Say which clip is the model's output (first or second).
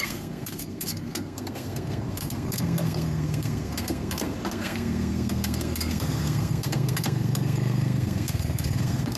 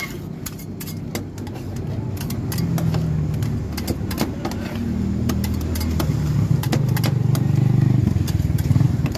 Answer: first